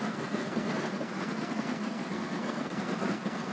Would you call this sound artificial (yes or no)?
yes